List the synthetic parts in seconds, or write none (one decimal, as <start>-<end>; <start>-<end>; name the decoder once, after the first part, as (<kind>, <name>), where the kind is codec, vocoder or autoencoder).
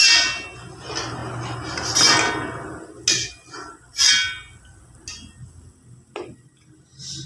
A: none